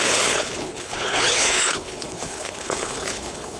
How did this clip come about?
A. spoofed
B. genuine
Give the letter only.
A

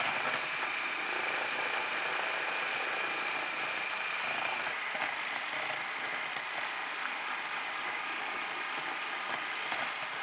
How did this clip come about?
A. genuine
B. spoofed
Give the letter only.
A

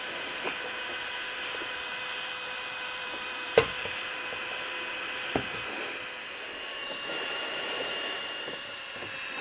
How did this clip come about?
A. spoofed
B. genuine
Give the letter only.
A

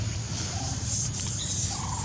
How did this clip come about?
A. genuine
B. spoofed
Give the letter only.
A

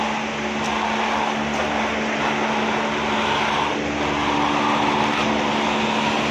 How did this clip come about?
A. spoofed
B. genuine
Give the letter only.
B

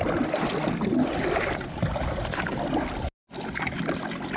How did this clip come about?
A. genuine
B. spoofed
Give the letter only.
A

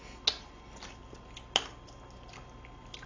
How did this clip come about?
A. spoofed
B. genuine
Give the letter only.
B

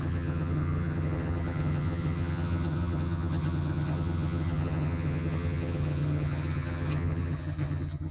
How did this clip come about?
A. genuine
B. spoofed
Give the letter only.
B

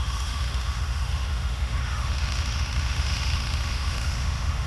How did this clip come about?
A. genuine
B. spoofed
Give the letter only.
B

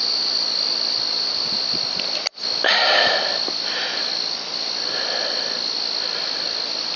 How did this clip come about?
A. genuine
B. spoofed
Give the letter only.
A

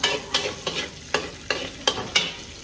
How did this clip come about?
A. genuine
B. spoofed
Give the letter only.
A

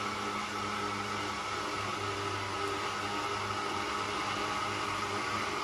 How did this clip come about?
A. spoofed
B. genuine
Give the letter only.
B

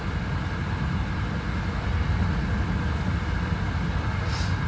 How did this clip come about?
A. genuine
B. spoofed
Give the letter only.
A